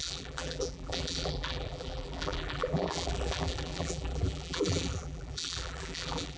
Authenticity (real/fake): fake